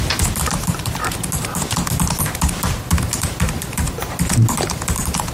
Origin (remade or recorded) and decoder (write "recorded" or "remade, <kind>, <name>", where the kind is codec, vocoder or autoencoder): recorded